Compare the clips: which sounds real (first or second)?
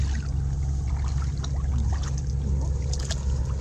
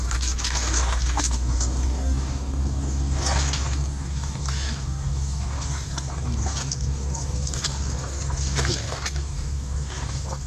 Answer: first